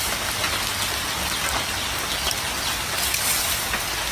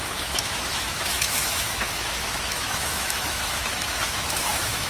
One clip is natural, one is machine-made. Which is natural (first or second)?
first